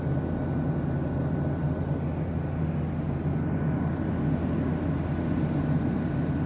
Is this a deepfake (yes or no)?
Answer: no